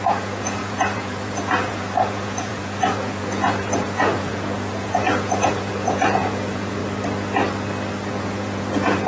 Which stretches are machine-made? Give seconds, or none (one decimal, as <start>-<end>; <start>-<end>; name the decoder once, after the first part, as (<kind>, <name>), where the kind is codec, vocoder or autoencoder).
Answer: 0.0-6.8 (vocoder, Vocos); 8.1-9.1